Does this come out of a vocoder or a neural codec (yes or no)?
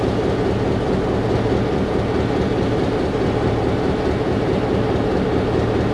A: no